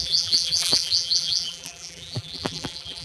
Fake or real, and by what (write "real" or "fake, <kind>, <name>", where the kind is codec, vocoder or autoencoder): fake, vocoder, BigVGAN v2